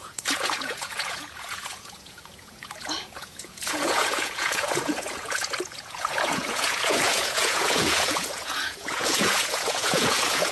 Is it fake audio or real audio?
fake